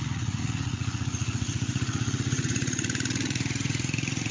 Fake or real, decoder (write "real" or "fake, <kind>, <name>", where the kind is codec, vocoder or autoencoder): fake, vocoder, Vocos